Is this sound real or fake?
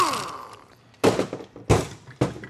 real